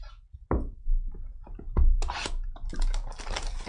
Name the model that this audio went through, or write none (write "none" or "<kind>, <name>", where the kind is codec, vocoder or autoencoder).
none